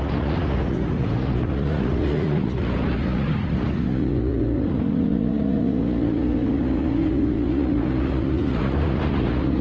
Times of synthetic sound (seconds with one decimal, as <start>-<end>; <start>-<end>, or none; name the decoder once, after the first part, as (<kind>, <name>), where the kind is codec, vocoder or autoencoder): 0.0-9.6 (vocoder, Vocos)